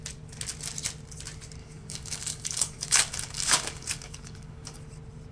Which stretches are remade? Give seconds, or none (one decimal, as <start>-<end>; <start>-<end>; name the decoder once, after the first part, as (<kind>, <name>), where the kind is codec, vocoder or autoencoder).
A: 1.6-4.8 (codec, DAC)